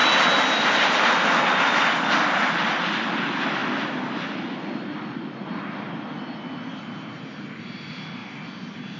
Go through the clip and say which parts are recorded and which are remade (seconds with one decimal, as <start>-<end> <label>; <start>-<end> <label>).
0.0-9.0 recorded